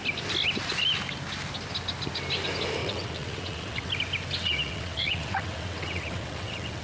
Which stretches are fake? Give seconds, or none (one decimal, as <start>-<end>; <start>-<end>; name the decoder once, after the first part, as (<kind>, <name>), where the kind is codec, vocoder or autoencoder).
2.8-3.9 (vocoder, WaveNeXt); 4.4-6.8